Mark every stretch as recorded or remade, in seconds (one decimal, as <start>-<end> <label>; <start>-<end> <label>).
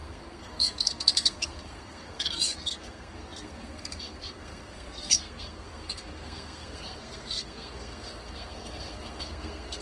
0.0-9.8 remade